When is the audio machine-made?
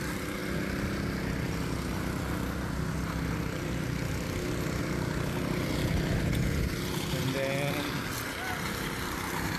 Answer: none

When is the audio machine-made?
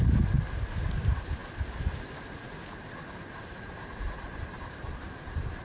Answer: none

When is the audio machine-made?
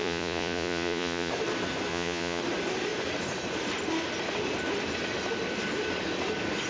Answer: 0.0-1.3 (vocoder, Vocos); 1.9-2.4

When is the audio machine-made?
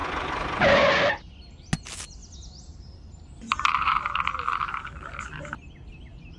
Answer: 0.0-0.9 (vocoder, Vocos)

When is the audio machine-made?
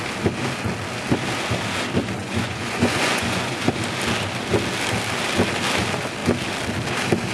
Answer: 2.2-3.7 (vocoder, Vocos)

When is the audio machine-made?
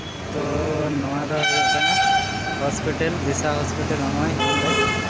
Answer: 0.0-1.4 (vocoder, Vocos); 2.0-2.5; 4.4-5.1